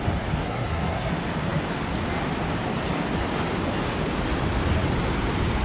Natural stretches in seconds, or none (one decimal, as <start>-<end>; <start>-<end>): 0.0-0.4; 1.1-5.6